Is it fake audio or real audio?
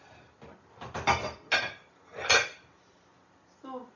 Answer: real